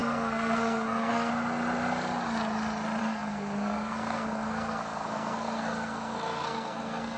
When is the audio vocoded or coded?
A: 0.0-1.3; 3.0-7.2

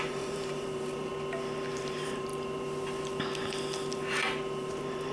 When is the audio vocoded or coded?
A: 0.0-1.1; 1.8-2.3; 4.6-5.1

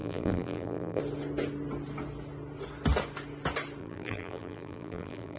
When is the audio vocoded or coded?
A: 0.0-1.0; 3.8-5.4

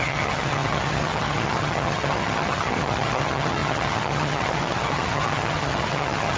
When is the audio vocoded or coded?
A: 0.0-6.4

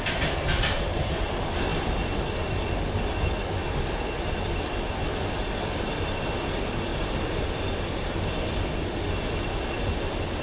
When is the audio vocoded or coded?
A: 6.9-8.2